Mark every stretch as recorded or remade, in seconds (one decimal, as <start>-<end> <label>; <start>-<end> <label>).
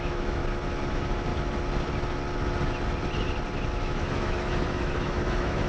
0.0-0.4 remade; 0.4-0.9 recorded; 0.9-1.3 remade; 1.3-3.8 recorded; 3.8-5.7 remade